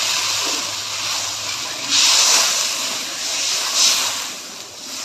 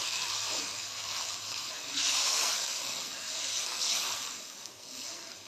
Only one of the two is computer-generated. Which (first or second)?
second